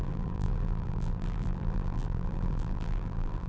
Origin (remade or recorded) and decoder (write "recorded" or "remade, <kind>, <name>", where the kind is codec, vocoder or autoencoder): remade, vocoder, BigVGAN v2